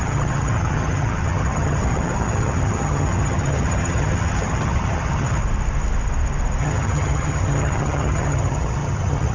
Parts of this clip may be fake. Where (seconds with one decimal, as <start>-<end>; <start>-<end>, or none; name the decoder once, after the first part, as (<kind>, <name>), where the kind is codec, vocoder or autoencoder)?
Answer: 0.0-5.4 (vocoder, HiFi-GAN); 6.6-9.3